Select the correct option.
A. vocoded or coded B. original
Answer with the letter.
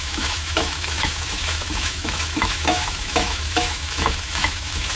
A